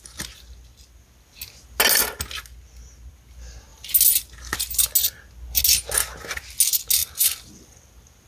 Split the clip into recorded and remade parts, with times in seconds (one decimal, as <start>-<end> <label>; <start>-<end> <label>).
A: 0.0-8.3 recorded